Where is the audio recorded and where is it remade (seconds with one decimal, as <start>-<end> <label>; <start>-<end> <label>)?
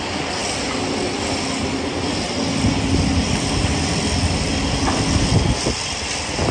0.0-6.5 recorded